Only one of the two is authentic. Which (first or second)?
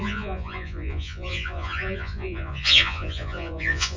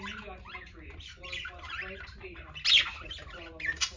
second